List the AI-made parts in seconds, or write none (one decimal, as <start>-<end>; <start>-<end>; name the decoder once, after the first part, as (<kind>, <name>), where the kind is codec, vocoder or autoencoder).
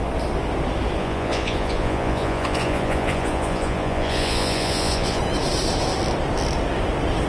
1.0-5.2 (vocoder, Vocos)